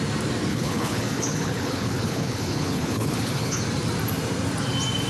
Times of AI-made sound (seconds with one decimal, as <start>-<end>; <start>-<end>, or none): 0.5-3.6

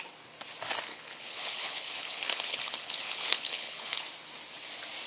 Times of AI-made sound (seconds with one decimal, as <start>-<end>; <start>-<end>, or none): 0.9-4.0

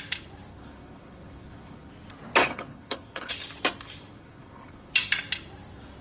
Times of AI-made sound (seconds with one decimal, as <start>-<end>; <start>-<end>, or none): 0.5-1.9; 2.4-3.3; 4.1-4.9

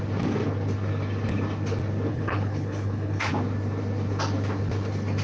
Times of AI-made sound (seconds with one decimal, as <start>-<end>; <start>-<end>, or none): 2.1-3.3

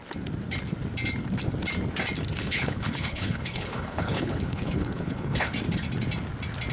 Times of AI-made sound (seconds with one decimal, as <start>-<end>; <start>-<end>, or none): 2.4-5.5

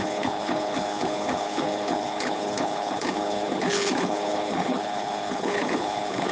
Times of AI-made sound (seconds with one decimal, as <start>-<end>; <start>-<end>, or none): 0.0-6.3

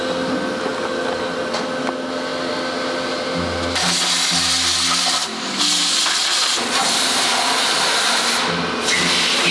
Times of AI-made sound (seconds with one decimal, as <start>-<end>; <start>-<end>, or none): none